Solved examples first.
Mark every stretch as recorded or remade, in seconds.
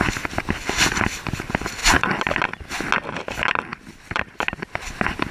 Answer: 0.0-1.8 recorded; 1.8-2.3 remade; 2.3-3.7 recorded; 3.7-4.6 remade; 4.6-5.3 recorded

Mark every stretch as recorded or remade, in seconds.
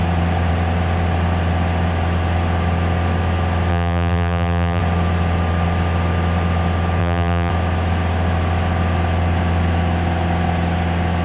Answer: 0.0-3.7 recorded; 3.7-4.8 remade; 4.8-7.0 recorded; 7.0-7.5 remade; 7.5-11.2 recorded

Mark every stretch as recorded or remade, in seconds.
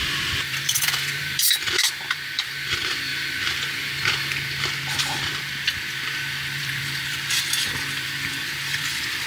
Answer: 0.0-3.1 remade; 3.1-5.0 recorded; 5.0-5.5 remade; 5.5-6.5 recorded; 6.5-9.3 remade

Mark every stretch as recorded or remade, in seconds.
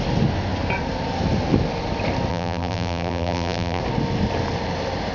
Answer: 0.0-2.3 recorded; 2.3-3.8 remade; 3.8-5.1 recorded